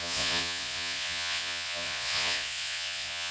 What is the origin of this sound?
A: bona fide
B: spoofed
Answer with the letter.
B